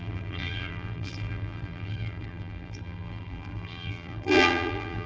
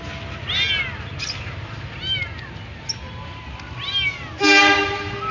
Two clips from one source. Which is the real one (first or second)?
second